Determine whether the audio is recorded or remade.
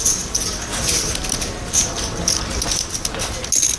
recorded